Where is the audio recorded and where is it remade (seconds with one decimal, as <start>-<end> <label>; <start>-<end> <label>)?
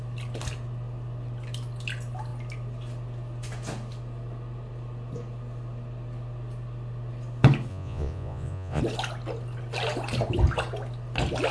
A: 0.0-7.7 recorded; 7.7-8.8 remade; 8.8-11.5 recorded